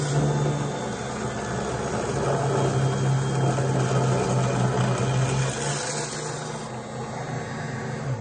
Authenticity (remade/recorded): recorded